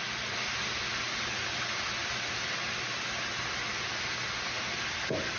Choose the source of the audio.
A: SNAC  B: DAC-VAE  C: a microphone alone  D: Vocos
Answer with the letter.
C